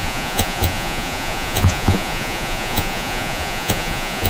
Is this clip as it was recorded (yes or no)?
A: no